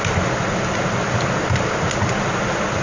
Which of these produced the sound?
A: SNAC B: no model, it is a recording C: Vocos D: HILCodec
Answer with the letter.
B